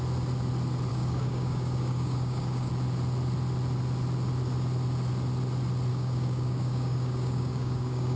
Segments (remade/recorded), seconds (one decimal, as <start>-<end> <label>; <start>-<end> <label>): 0.0-0.9 recorded; 0.9-2.7 remade; 2.7-5.9 recorded; 5.9-8.2 remade